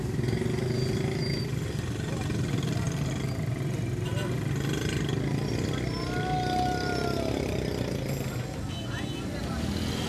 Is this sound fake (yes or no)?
no